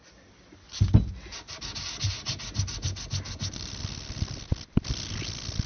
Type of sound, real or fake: real